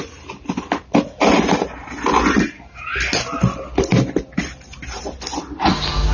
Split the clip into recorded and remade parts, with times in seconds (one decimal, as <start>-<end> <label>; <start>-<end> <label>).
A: 0.0-6.1 recorded